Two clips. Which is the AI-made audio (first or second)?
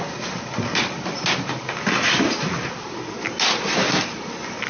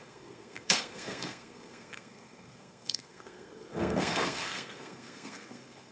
second